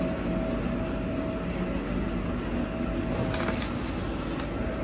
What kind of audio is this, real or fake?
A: real